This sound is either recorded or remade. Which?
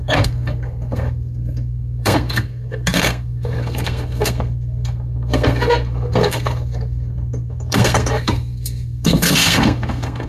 remade